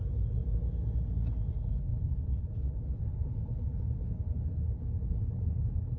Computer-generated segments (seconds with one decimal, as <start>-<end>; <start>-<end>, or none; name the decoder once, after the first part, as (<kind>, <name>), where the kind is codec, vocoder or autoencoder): 0.0-0.4 (codec, HILCodec); 1.5-6.0